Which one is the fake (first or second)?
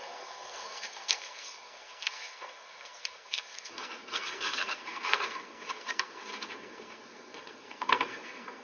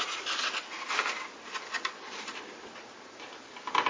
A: first